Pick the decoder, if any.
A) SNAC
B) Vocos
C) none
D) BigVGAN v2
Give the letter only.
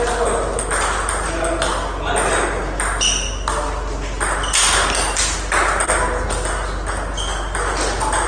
C